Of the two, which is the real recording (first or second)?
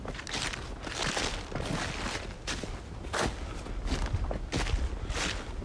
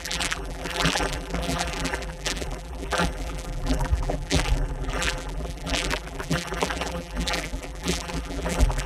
first